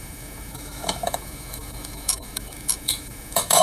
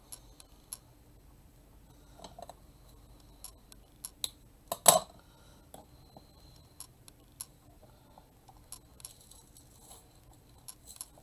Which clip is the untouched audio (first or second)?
second